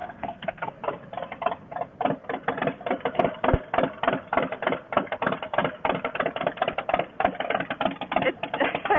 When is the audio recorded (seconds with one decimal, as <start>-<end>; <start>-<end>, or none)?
0.7-9.0